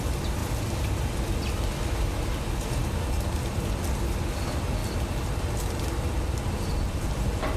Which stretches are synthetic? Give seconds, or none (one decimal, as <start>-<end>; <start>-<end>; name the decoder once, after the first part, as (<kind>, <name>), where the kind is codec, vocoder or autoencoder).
0.0-2.8 (vocoder, BigVGAN v2); 3.5-4.8; 6.0-7.6